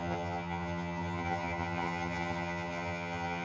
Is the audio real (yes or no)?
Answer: no